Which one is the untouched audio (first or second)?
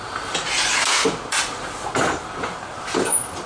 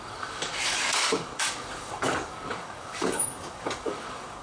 first